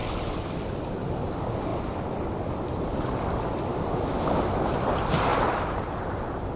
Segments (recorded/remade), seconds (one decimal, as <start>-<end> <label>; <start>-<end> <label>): 0.0-0.8 remade; 0.8-1.7 recorded; 1.7-4.1 remade; 4.1-5.3 recorded; 5.3-6.6 remade